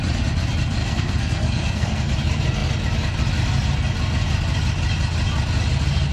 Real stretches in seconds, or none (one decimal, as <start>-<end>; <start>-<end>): 0.0-0.8; 2.1-6.1